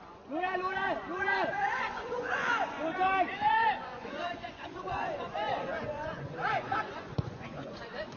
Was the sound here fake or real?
fake